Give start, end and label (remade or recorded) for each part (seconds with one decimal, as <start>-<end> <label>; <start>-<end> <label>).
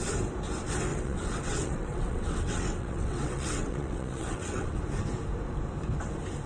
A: 0.0-0.9 recorded; 0.9-4.8 remade; 4.8-6.5 recorded